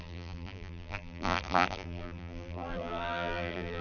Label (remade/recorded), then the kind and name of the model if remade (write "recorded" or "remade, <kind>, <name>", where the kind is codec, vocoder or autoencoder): remade, vocoder, BigVGAN v2